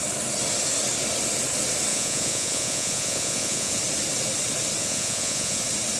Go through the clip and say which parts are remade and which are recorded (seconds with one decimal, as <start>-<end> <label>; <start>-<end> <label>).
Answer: 0.0-1.9 recorded; 1.9-3.8 remade; 3.8-4.8 recorded; 4.8-5.6 remade; 5.6-6.0 recorded